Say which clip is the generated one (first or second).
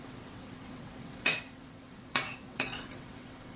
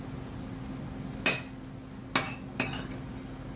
first